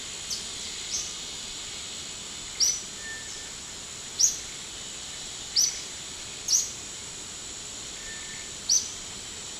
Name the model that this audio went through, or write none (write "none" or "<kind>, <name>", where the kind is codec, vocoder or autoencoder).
none